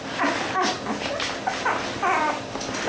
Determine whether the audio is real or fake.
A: real